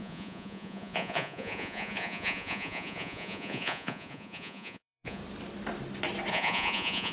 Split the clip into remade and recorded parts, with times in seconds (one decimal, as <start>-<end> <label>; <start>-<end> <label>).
0.0-5.2 remade; 5.2-6.3 recorded; 6.3-7.1 remade